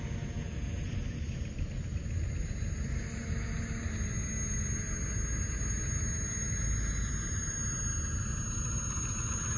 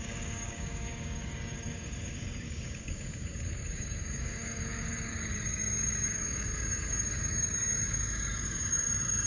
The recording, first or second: first